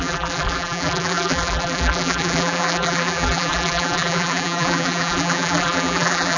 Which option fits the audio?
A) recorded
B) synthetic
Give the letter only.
B